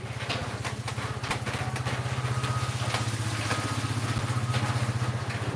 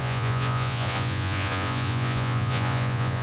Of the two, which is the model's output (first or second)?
second